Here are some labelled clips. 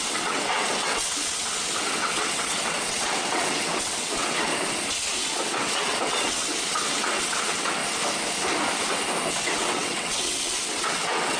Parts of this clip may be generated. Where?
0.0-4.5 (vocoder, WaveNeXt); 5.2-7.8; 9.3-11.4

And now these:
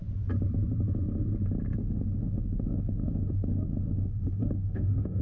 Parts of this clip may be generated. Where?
1.8-5.2 (autoencoder, DAC-VAE)

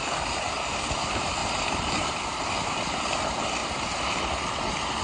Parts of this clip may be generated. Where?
1.4-2.1 (vocoder, BigVGAN v2); 3.6-4.2